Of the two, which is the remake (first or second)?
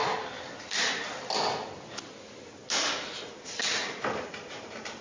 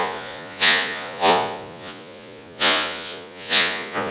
second